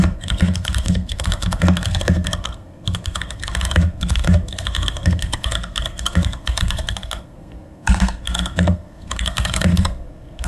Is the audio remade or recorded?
remade